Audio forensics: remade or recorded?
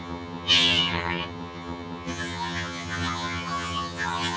remade